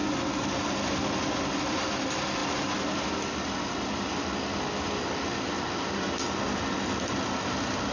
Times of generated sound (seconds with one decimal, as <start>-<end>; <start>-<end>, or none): none